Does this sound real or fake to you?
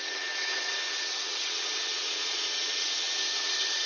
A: fake